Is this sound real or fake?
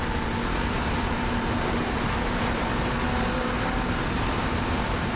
fake